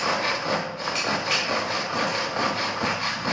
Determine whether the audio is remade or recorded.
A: recorded